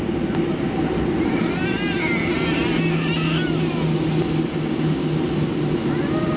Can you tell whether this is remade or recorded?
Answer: recorded